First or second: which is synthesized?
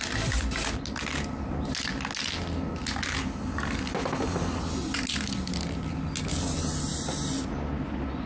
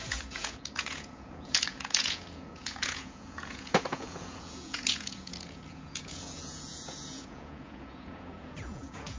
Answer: second